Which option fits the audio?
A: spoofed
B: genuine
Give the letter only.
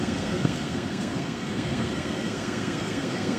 A